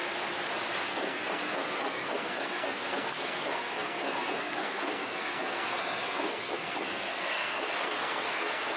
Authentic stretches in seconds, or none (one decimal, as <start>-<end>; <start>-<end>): 0.0-0.8